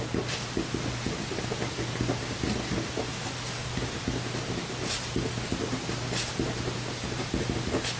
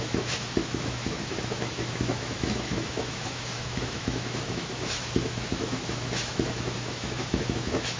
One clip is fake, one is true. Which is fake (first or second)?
second